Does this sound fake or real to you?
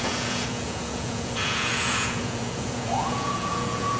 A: fake